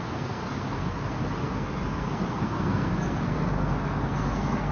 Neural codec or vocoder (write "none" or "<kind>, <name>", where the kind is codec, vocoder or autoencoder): codec, SNAC